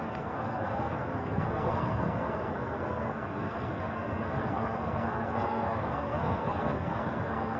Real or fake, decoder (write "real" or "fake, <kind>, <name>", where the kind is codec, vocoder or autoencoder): fake, codec, SNAC